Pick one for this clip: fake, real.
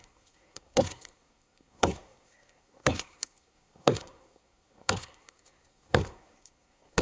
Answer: fake